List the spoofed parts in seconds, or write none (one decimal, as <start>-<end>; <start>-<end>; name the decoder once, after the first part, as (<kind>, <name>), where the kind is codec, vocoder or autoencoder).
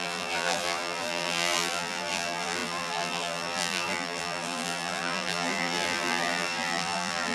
0.0-7.3 (vocoder, BigVGAN v2)